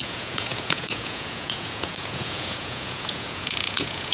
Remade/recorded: remade